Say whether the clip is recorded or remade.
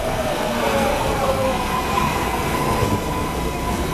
remade